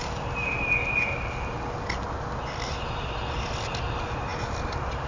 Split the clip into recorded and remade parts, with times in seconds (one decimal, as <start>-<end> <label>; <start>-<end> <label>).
0.0-5.1 recorded